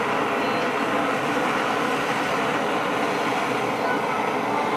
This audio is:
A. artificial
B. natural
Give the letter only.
B